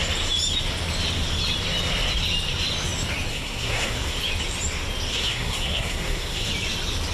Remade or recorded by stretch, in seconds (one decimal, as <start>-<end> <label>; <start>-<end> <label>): 0.0-3.3 recorded; 3.3-4.2 remade; 4.2-5.1 recorded; 5.1-6.5 remade; 6.5-7.1 recorded